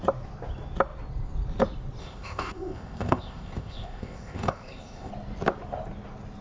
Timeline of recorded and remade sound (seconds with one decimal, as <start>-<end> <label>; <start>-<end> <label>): 0.0-2.0 recorded; 2.0-5.1 remade; 5.1-6.4 recorded